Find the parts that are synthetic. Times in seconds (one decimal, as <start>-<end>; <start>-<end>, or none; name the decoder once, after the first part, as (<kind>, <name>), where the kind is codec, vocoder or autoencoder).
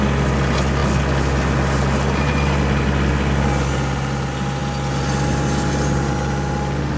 none